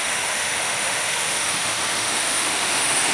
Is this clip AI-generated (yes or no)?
yes